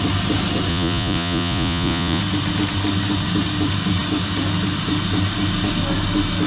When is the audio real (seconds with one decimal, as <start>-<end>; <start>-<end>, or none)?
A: 0.0-0.7; 2.2-6.5